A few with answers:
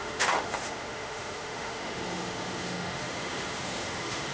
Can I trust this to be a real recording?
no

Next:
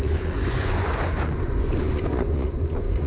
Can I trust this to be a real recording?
no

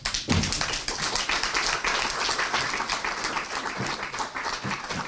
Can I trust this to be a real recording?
yes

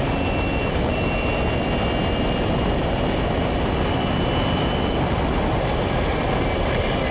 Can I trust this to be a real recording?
yes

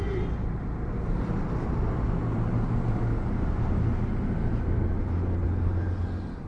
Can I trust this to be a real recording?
yes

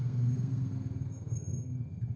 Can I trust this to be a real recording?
no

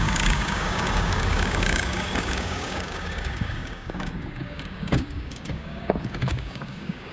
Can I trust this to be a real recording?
no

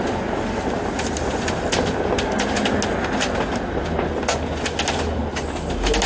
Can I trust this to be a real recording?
yes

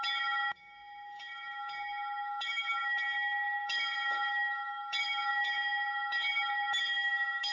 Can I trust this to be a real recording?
no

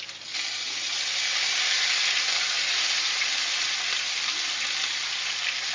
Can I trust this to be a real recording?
yes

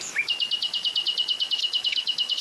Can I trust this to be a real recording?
no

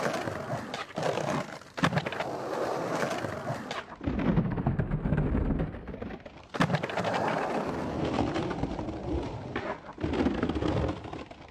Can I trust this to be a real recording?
yes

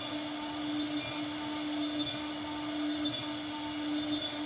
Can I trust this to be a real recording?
yes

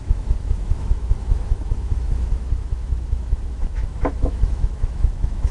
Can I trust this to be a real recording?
no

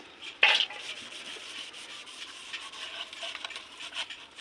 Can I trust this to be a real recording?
yes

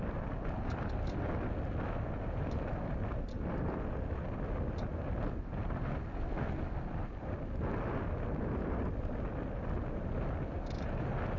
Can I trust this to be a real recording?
yes